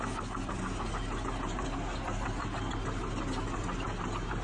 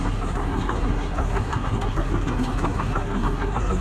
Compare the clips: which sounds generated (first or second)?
second